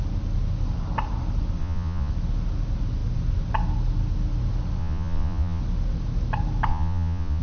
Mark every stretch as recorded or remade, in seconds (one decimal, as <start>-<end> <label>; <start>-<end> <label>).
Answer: 0.0-1.6 recorded; 1.6-2.1 remade; 2.1-4.8 recorded; 4.8-5.6 remade; 5.6-6.7 recorded; 6.7-7.4 remade